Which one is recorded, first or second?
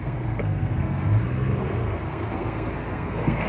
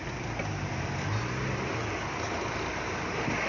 second